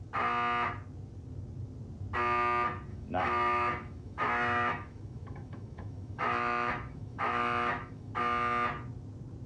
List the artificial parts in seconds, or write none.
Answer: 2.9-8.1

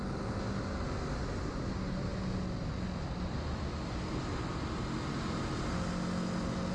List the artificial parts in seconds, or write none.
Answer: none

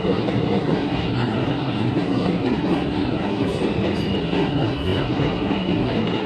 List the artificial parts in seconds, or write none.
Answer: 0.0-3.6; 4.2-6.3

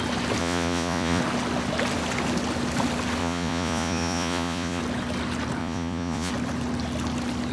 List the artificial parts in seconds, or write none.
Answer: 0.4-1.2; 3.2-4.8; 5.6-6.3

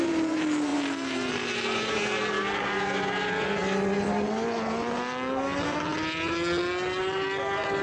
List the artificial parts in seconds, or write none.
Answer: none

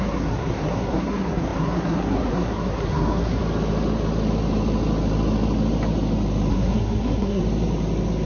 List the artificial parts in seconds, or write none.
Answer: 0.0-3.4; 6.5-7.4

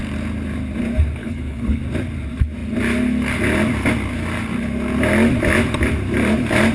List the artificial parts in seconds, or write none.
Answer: 1.2-1.8